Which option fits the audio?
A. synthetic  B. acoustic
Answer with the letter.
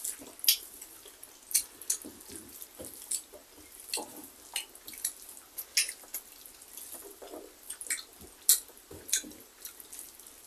B